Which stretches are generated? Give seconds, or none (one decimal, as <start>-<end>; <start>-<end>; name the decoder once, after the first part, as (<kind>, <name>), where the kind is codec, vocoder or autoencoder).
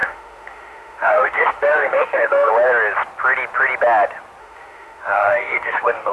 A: 0.0-2.5 (autoencoder, DAC-VAE); 4.4-6.1